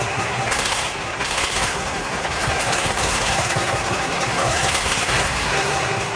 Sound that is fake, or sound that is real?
fake